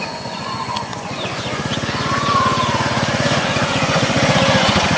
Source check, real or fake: fake